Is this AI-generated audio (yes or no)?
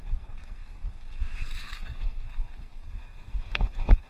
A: yes